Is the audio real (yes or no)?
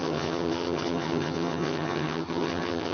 no